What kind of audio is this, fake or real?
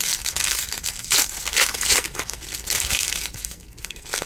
fake